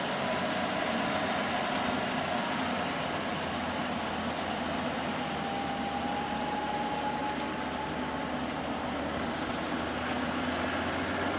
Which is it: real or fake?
real